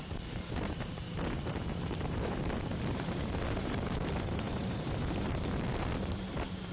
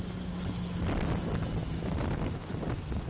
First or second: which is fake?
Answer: first